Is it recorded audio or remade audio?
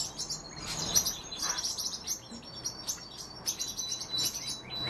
recorded